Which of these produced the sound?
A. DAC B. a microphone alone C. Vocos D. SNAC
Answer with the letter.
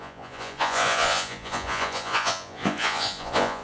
C